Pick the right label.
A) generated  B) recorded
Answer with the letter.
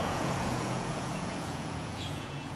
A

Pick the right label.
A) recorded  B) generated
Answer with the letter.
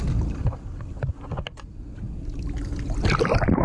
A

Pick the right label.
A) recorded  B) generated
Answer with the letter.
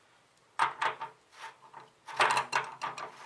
A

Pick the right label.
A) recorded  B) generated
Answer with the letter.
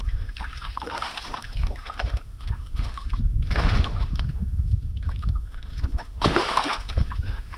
B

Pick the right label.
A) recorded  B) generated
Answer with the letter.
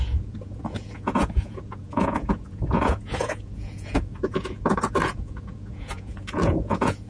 B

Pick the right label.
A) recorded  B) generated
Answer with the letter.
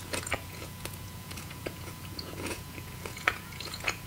B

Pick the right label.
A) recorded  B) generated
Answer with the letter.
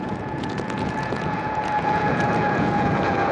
B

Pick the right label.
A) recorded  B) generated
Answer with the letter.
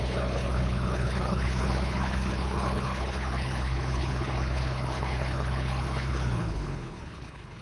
B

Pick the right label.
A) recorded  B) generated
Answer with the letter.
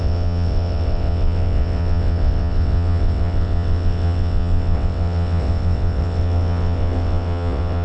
B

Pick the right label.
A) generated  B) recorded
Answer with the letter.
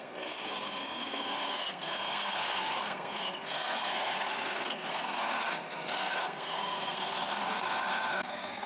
A